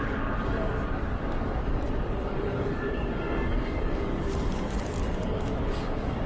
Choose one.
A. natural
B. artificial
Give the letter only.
B